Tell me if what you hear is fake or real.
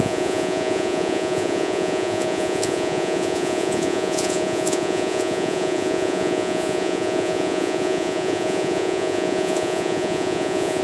fake